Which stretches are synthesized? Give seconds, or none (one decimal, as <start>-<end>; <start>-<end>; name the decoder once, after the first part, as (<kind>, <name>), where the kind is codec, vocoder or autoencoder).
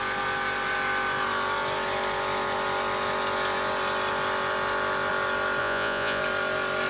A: 5.6-6.2 (vocoder, Vocos)